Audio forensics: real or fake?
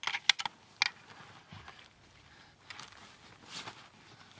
real